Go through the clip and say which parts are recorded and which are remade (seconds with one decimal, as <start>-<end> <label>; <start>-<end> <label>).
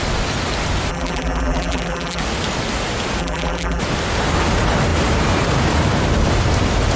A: 0.0-0.9 recorded; 0.9-2.2 remade; 2.2-3.2 recorded; 3.2-3.8 remade; 3.8-7.0 recorded